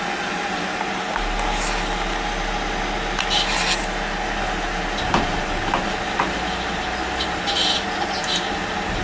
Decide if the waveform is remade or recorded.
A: recorded